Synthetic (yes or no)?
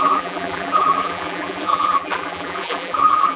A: yes